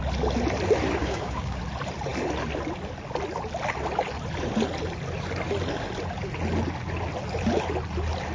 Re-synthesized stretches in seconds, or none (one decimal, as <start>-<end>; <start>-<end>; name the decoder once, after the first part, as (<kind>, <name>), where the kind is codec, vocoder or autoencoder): 1.0-1.6 (codec, DAC)

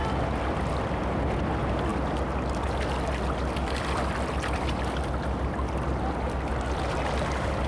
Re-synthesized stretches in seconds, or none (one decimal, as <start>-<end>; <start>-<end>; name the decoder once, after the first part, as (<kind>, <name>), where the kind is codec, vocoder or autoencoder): none

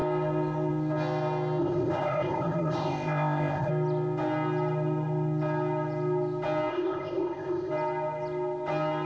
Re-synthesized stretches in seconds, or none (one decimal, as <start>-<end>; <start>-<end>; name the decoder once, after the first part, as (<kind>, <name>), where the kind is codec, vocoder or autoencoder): 1.6-3.7 (codec, ZipCodec); 6.7-7.7

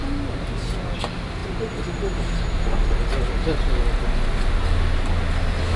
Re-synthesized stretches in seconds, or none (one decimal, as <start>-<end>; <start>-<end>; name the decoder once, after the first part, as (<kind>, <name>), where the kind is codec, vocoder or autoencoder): none

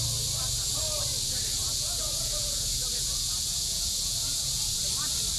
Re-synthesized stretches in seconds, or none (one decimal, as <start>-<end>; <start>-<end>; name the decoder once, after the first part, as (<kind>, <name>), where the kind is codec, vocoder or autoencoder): 1.6-4.8 (vocoder, Vocos)

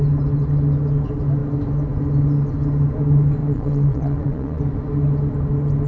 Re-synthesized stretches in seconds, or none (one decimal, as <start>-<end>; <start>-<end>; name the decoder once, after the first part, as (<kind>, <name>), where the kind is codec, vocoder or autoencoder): 3.4-4.6 (vocoder, Vocos)

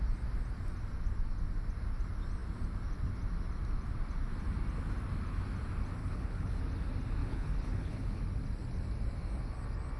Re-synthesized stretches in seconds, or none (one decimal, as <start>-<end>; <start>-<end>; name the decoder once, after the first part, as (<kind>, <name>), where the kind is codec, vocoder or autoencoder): 6.0-6.6 (codec, HILCodec); 7.2-8.2

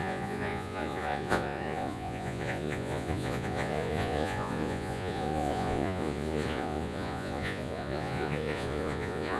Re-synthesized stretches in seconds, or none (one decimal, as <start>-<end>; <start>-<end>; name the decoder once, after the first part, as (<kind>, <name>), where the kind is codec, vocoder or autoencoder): 0.0-9.4 (vocoder, Vocos)